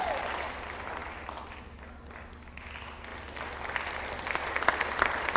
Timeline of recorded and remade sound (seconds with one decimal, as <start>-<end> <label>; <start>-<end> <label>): 0.0-5.4 recorded